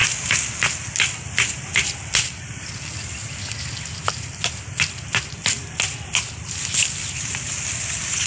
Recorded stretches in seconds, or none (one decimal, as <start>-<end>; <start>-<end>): 0.0-8.3